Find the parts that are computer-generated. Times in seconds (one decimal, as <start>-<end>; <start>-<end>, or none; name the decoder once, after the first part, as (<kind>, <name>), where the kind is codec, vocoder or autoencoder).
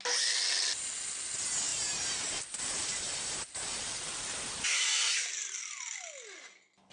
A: 1.7-5.8 (vocoder, BigVGAN v2)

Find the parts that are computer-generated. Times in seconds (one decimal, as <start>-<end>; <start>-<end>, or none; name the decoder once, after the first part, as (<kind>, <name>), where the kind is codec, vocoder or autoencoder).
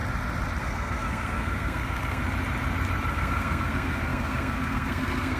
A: 0.6-2.2 (codec, SNAC); 3.1-5.4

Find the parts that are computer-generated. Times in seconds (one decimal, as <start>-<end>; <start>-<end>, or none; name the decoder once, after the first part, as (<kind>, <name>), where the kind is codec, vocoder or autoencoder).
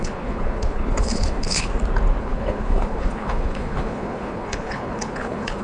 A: 0.0-1.7 (codec, HILCodec); 2.2-5.6